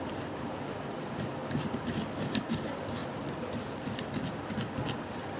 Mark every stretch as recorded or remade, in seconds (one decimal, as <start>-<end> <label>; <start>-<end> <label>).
0.0-3.0 remade; 3.0-5.4 recorded